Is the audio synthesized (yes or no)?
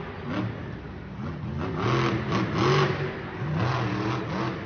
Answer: no